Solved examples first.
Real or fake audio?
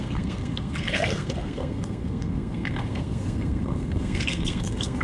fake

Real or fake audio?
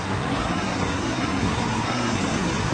fake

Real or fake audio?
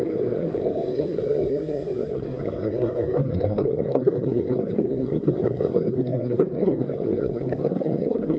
fake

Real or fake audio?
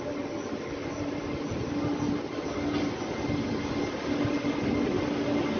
real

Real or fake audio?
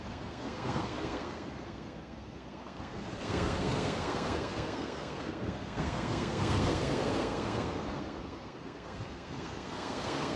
fake